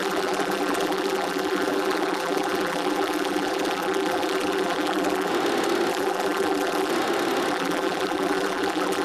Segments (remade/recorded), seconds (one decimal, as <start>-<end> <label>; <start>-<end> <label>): 0.0-5.3 remade; 5.3-5.9 recorded; 5.9-6.9 remade; 6.9-7.5 recorded; 7.5-9.0 remade